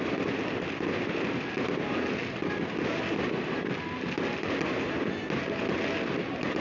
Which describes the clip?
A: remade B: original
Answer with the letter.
B